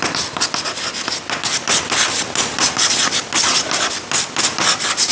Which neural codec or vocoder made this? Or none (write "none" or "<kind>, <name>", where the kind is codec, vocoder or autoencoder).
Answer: none